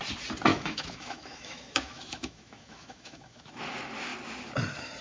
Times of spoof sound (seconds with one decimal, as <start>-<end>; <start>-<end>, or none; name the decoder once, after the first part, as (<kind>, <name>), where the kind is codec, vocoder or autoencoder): 0.5-3.5 (autoencoder, DAC-VAE)